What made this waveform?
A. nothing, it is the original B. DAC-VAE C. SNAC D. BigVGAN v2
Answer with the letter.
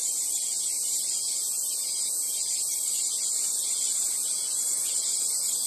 A